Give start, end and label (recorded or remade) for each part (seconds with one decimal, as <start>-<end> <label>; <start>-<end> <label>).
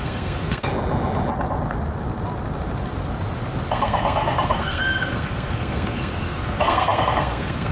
0.0-0.7 remade; 0.7-3.7 recorded; 3.7-7.7 remade